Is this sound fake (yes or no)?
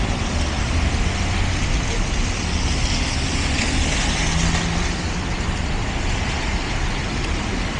no